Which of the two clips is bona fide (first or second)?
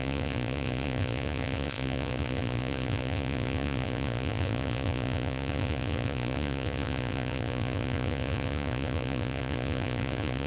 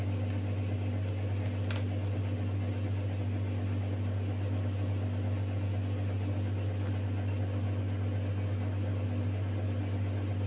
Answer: second